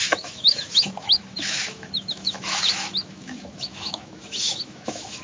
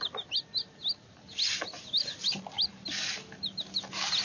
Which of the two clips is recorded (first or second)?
second